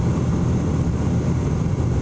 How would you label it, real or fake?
fake